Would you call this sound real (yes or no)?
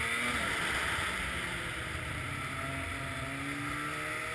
yes